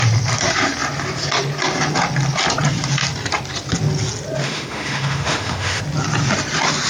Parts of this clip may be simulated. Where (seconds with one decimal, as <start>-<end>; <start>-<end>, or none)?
4.4-5.8